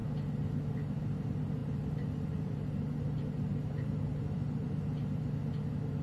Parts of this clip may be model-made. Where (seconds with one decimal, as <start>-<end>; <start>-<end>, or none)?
1.6-5.2